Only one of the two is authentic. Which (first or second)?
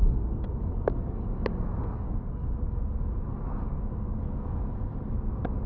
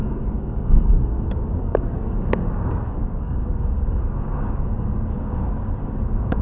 first